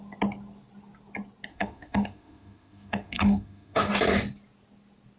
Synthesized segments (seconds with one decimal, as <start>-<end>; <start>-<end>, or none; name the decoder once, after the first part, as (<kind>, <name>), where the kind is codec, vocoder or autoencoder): 1.5-3.9 (autoencoder, DAC-VAE)